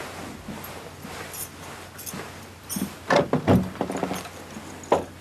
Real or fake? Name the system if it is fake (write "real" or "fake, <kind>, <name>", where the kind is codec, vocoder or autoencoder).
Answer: real